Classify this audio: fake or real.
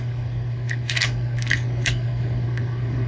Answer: fake